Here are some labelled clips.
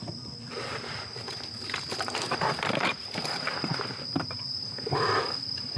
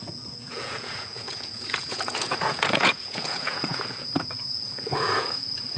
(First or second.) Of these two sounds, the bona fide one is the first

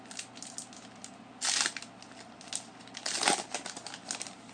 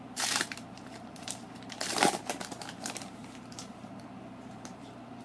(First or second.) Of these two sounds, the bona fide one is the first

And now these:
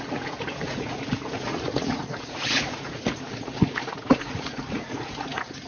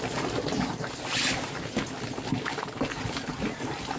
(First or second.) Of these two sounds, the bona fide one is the second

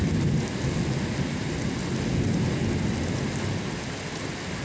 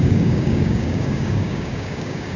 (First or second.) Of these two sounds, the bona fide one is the first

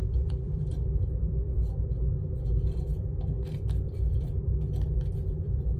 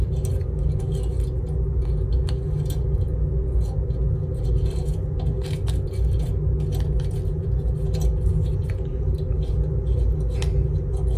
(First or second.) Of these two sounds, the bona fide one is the second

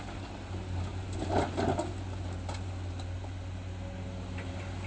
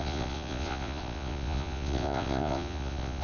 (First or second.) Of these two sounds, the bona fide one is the first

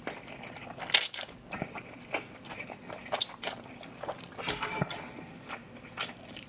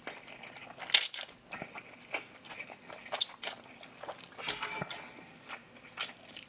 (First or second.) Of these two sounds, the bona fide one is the second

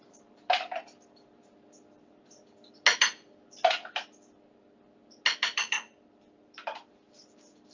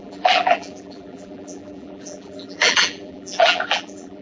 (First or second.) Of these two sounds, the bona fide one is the first